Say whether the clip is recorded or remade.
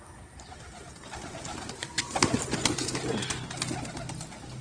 recorded